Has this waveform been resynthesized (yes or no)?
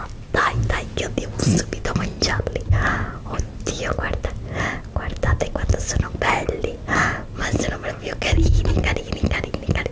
no